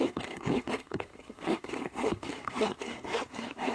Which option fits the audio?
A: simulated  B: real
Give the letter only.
A